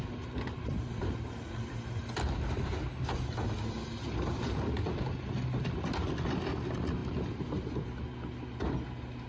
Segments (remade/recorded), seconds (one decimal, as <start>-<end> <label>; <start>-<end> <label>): 0.0-9.3 recorded